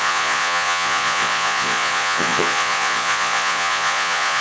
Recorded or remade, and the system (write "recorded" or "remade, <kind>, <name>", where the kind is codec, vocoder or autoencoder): remade, vocoder, Vocos